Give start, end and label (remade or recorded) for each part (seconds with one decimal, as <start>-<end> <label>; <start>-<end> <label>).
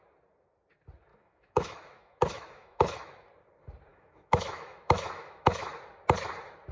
0.0-1.1 recorded; 1.1-3.1 remade; 3.1-3.9 recorded; 3.9-5.7 remade; 5.7-6.7 recorded